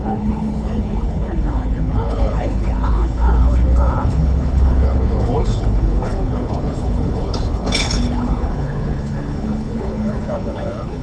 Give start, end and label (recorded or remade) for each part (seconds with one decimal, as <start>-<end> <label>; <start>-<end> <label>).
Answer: 0.0-11.0 remade